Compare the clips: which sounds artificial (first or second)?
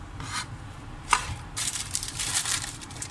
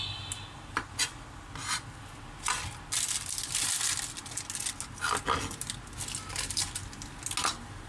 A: first